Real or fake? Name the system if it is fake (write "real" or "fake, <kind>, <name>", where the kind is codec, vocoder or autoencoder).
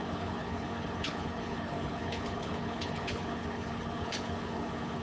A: fake, codec, HILCodec